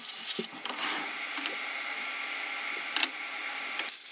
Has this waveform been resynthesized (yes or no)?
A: yes